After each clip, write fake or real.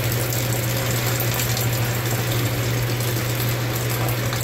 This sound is real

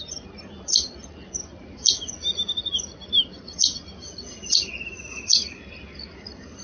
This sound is real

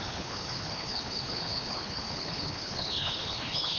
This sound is fake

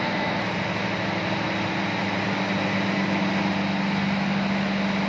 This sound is real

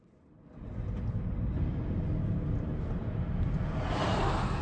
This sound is real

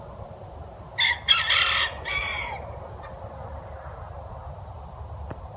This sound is real